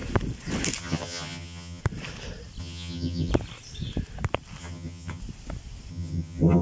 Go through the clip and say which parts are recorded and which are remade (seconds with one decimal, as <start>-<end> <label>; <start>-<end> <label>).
0.0-0.8 recorded; 0.8-1.8 remade; 1.8-2.6 recorded; 2.6-3.3 remade; 3.3-4.6 recorded; 4.6-5.2 remade; 5.2-5.9 recorded; 5.9-6.6 remade